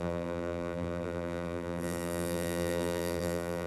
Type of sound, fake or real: fake